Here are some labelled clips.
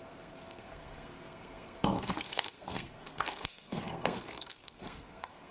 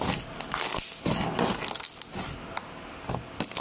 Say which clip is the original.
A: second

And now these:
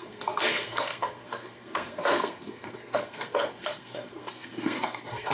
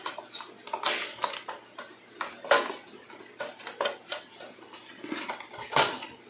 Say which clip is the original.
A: second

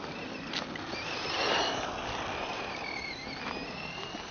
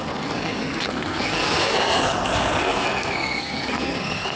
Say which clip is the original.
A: first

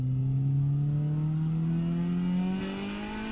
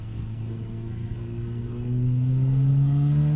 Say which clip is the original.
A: first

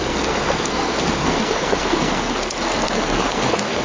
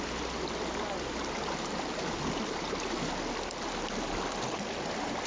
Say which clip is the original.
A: second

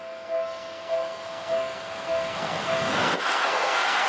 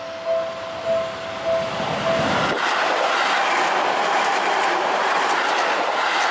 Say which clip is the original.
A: second